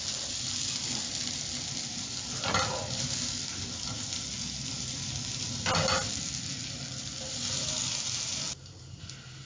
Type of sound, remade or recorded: recorded